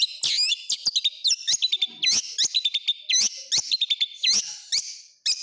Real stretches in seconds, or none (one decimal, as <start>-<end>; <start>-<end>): 0.0-5.4